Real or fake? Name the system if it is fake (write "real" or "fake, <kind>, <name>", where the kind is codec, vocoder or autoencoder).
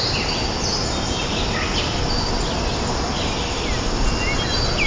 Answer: real